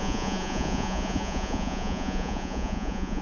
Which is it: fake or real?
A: fake